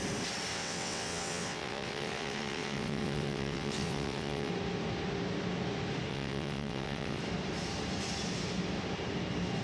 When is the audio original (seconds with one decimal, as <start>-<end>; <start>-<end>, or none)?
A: 0.0-0.5; 4.5-6.1; 7.2-9.6